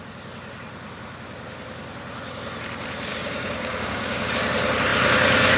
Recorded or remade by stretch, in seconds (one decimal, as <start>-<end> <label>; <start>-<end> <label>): 0.0-3.1 recorded; 3.1-4.3 remade; 4.3-5.6 recorded